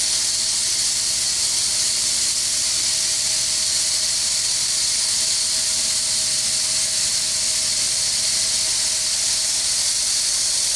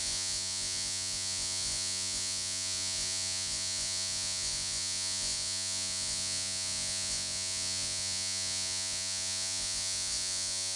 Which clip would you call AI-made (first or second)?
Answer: second